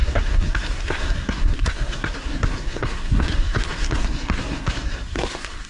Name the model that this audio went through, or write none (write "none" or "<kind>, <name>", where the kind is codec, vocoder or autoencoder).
codec, SNAC